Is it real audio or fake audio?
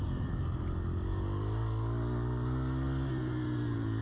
real